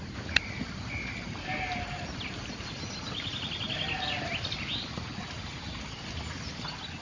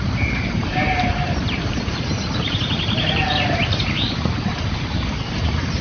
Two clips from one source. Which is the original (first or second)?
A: first